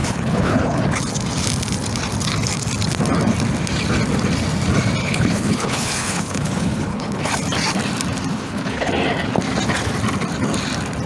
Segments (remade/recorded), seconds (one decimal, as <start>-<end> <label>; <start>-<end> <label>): 0.0-0.8 remade; 0.8-5.0 recorded; 5.0-7.3 remade; 7.3-8.3 recorded; 8.3-8.9 remade; 8.9-11.1 recorded